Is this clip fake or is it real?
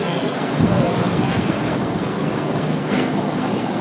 fake